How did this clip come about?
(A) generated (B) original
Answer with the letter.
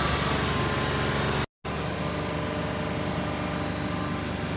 B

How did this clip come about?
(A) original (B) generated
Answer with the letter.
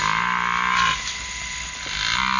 A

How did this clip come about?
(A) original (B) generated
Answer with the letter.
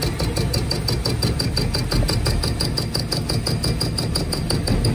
A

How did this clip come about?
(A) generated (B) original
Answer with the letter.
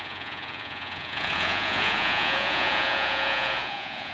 A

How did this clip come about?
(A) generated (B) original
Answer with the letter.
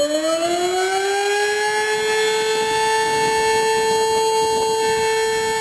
B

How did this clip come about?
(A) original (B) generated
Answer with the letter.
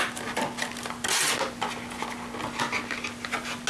A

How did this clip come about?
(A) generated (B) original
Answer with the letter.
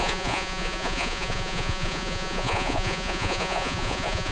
A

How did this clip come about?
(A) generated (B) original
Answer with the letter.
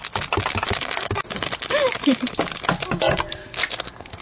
B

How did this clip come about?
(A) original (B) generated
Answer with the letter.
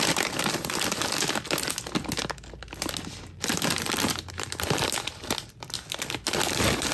A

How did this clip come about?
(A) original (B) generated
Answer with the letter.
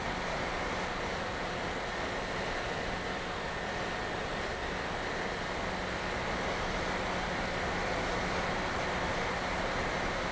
A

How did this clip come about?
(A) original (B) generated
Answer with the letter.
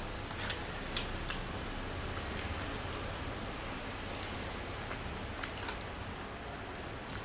A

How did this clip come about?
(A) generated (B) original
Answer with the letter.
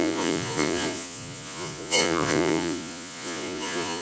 A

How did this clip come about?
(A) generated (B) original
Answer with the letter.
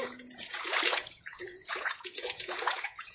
A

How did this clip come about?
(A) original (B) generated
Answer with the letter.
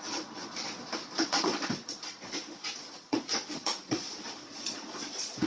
B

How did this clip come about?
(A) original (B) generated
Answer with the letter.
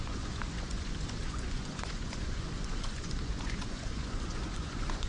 B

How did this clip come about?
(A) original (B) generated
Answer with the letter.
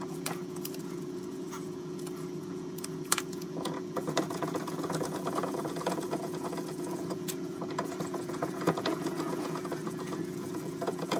B